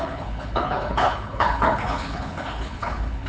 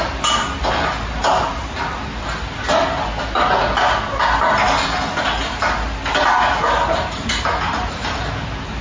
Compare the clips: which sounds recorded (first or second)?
second